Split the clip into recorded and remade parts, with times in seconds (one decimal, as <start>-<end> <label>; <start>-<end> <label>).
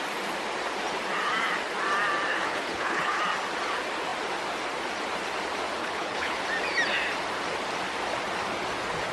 0.0-2.3 recorded; 2.3-3.2 remade; 3.2-5.8 recorded; 5.8-6.4 remade; 6.4-9.1 recorded